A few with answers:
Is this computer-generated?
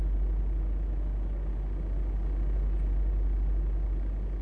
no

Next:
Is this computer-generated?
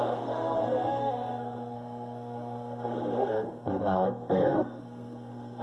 yes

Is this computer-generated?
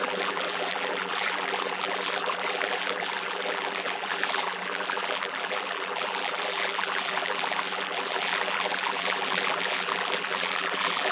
yes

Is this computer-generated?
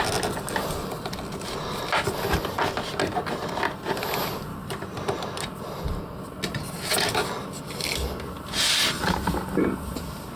no